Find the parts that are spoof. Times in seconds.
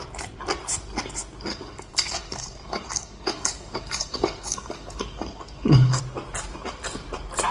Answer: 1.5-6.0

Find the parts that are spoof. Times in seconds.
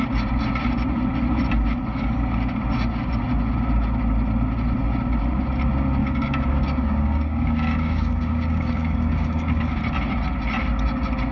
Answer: 6.0-9.8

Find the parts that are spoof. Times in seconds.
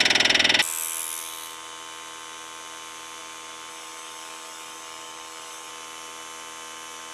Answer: 3.7-5.7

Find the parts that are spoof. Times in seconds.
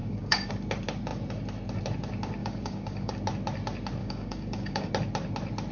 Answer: 0.0-0.5; 2.4-3.1; 4.0-4.9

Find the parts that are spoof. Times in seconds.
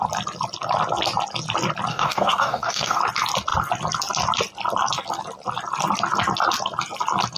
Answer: 1.9-3.0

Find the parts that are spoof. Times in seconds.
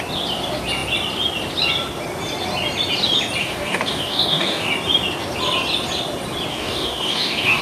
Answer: 3.4-4.7; 6.5-7.6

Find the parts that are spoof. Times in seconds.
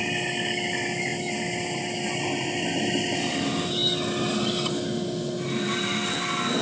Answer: none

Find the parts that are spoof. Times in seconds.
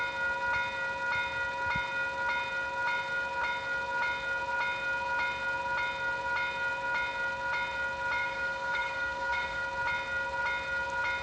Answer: 8.2-9.6